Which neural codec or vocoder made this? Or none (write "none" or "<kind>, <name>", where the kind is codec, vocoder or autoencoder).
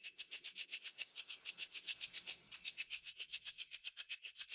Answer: codec, SNAC